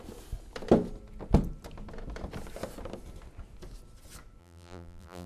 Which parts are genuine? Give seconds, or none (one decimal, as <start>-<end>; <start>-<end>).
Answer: 0.0-4.4